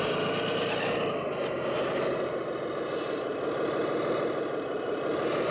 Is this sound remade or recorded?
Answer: recorded